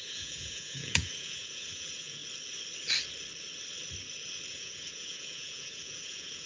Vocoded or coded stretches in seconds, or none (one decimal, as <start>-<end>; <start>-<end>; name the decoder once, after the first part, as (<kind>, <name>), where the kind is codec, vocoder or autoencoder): 0.0-2.2 (vocoder, Vocos); 4.5-6.5